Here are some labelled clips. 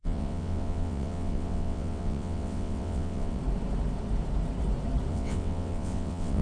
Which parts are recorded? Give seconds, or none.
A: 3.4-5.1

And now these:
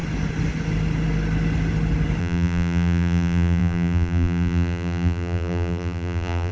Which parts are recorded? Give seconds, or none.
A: 0.0-2.2

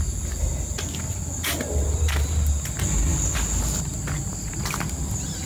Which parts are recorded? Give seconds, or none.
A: 0.0-5.5

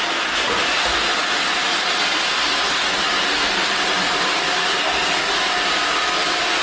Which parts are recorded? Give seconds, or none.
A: 0.0-6.6

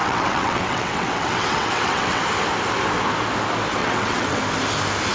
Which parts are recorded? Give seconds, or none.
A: 2.2-3.8; 4.4-5.1

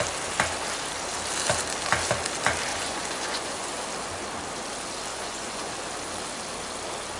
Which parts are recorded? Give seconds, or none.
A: 0.0-2.7; 3.7-5.1; 5.7-7.2

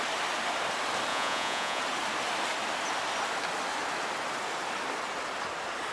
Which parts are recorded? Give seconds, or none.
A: 0.0-1.1; 1.8-5.9